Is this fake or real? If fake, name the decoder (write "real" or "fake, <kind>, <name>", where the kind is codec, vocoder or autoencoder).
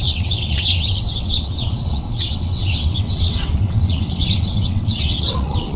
fake, vocoder, WaveNeXt